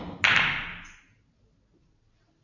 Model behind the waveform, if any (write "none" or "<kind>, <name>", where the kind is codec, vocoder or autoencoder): none